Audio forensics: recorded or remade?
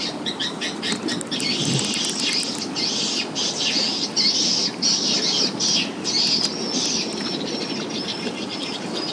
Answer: recorded